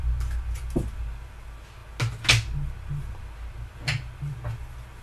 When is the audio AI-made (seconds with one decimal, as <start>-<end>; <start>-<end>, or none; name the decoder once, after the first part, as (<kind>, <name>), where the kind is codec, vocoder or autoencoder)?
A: none